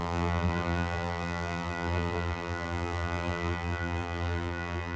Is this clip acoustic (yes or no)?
no